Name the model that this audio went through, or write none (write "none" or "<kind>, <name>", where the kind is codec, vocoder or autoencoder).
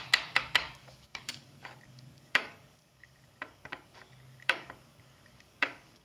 codec, DAC